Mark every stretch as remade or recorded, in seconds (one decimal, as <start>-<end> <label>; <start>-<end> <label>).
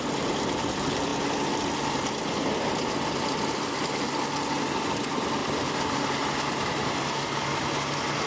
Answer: 0.0-8.3 recorded